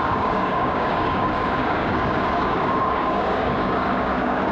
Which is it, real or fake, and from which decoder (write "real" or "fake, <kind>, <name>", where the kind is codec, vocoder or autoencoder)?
fake, codec, DAC